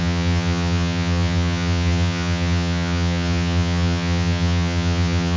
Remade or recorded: remade